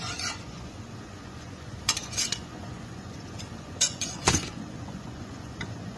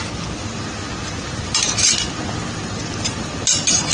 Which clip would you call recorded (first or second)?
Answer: second